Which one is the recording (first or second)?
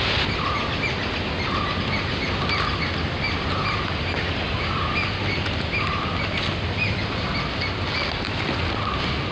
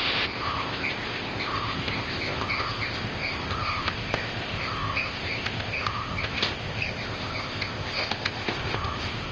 first